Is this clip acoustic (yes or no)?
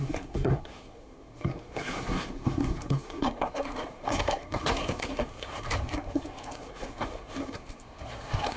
no